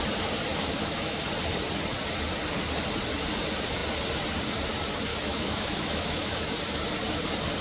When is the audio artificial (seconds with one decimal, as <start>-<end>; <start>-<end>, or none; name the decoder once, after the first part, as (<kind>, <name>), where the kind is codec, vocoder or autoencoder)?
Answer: 0.5-1.2 (autoencoder, DAC-VAE); 5.1-6.4